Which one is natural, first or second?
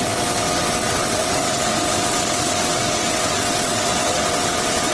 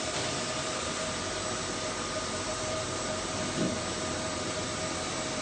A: second